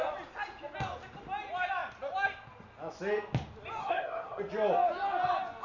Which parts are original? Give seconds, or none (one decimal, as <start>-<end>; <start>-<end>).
0.0-3.8; 4.4-5.6